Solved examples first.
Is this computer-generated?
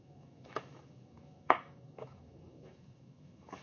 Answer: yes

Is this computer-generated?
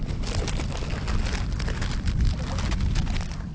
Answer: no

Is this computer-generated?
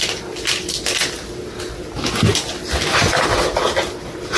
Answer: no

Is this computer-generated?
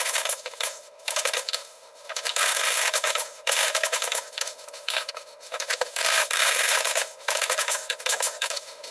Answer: yes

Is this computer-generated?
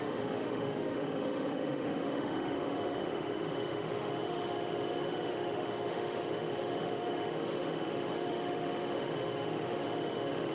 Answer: yes